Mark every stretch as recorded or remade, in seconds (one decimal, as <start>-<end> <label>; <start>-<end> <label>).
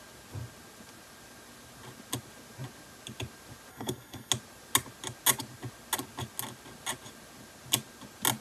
0.0-3.7 recorded; 3.7-4.3 remade; 4.3-8.4 recorded